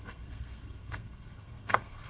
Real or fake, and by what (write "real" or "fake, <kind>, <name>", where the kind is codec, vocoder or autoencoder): fake, codec, SNAC